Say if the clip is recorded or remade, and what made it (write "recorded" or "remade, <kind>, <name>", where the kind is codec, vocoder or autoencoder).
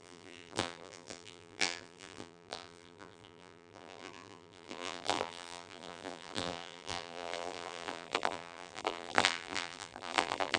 remade, vocoder, BigVGAN v2